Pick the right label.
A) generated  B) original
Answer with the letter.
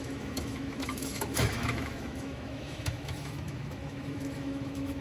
A